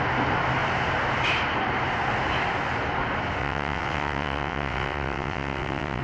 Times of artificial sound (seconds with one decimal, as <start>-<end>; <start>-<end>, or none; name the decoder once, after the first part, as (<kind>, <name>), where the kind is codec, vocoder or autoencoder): 3.4-6.0 (vocoder, WaveNeXt)